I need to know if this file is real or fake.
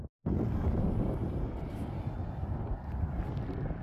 real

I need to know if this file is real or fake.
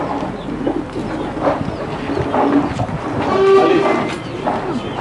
real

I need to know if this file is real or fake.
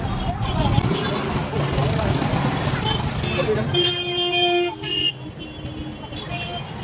real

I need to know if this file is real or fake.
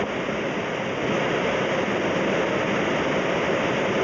real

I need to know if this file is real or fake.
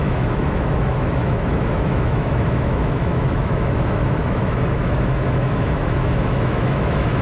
fake